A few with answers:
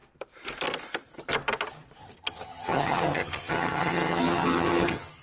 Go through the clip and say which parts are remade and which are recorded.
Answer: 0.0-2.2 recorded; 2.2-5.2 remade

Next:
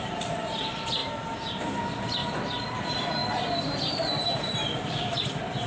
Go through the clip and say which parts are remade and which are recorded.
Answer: 0.0-2.2 remade; 2.2-2.8 recorded; 2.8-5.1 remade; 5.1-5.7 recorded

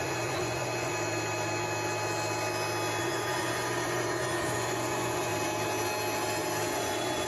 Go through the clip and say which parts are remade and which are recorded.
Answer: 0.0-0.9 remade; 0.9-3.0 recorded; 3.0-5.3 remade; 5.3-6.7 recorded; 6.7-7.3 remade

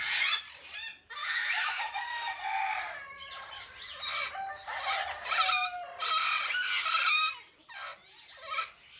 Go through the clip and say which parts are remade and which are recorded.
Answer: 0.0-1.2 recorded; 1.2-1.8 remade; 1.8-9.0 recorded

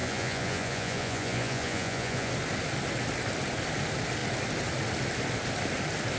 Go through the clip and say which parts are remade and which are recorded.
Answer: 0.0-2.3 remade; 2.3-6.2 recorded

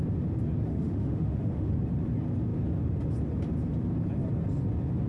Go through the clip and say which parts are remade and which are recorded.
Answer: 0.0-0.7 recorded; 0.7-1.7 remade; 1.7-5.1 recorded